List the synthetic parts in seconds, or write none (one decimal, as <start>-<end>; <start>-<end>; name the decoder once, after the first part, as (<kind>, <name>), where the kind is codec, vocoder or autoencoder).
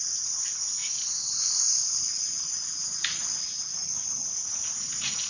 0.0-0.8 (vocoder, Vocos); 1.8-5.3